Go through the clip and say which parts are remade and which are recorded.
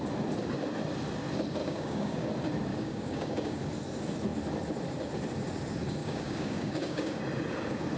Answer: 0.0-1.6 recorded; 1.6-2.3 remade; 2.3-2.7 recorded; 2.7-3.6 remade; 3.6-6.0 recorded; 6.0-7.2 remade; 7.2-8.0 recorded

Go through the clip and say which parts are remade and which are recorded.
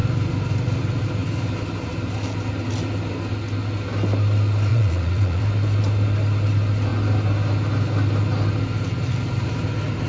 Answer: 0.0-4.7 recorded; 4.7-5.4 remade; 5.4-10.1 recorded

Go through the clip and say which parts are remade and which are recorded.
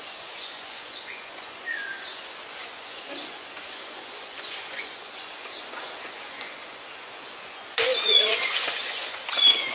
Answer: 0.0-9.7 remade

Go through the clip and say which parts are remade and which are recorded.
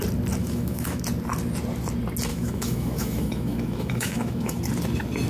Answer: 0.0-0.4 recorded; 0.4-1.0 remade; 1.0-2.3 recorded; 2.3-4.6 remade; 4.6-5.3 recorded